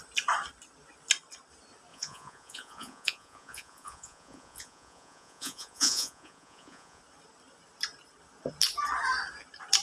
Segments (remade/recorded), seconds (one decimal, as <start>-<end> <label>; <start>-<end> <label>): 0.0-1.9 recorded; 1.9-7.0 remade; 7.0-9.8 recorded